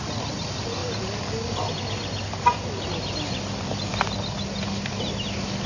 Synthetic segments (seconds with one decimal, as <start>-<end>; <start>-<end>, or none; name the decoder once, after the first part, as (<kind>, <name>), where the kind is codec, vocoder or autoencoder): none